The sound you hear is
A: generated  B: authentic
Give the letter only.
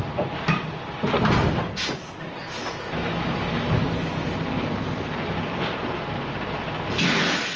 B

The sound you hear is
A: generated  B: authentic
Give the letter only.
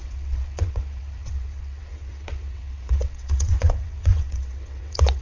A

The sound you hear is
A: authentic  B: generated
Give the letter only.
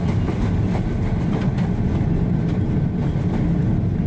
A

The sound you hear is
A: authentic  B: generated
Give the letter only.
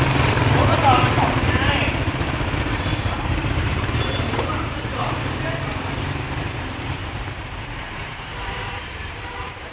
B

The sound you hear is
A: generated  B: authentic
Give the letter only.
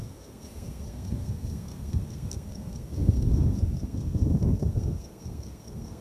A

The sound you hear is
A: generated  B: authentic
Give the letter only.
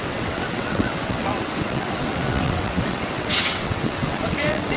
A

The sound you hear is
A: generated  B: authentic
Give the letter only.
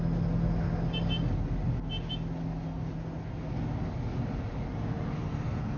B